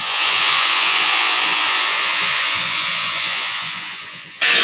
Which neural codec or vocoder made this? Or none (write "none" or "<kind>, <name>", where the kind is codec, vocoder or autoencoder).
vocoder, Vocos